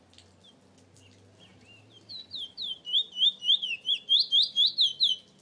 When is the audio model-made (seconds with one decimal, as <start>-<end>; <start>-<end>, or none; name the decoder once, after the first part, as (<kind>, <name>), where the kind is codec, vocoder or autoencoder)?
1.5-4.7 (vocoder, BigVGAN v2)